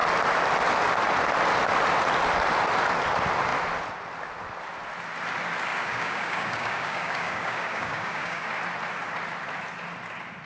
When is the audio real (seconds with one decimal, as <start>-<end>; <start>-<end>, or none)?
0.0-5.7; 8.5-10.5